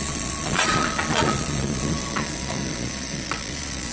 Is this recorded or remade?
remade